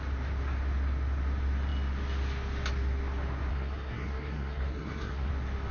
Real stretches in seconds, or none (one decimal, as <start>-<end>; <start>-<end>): 0.0-3.5; 5.3-5.7